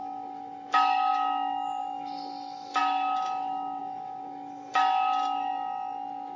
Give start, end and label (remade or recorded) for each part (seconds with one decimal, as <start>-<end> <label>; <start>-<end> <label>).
0.0-5.5 remade; 5.5-6.4 recorded